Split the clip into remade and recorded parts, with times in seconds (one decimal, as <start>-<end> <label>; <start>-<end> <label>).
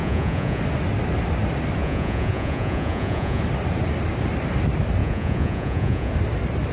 0.0-0.6 remade; 0.6-1.8 recorded; 1.8-3.4 remade; 3.4-5.0 recorded; 5.0-6.1 remade; 6.1-6.7 recorded